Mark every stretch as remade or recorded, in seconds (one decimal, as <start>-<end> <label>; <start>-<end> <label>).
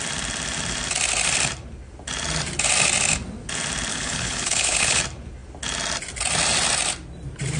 0.0-3.9 recorded; 3.9-5.0 remade; 5.0-7.6 recorded